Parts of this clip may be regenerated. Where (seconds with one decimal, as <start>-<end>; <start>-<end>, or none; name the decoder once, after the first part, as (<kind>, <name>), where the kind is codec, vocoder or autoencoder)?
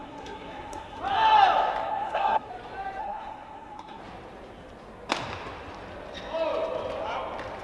0.0-1.0 (codec, SNAC); 1.8-2.5; 3.0-4.0